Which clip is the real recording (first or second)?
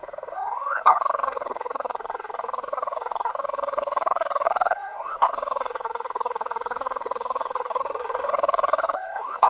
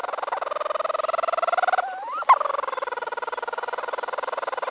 second